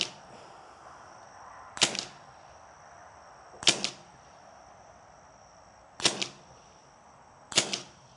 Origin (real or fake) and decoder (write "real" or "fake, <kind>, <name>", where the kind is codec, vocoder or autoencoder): real